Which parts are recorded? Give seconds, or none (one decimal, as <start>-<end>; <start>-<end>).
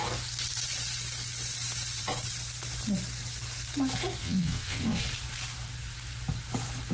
0.0-4.2; 5.0-6.9